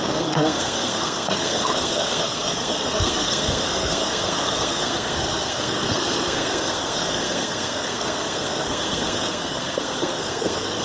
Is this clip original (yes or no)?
no